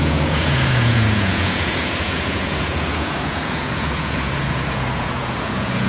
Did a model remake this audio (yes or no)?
yes